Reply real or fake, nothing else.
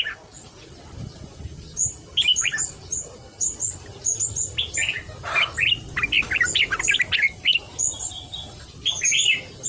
real